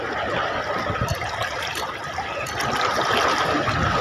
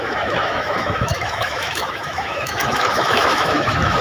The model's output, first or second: second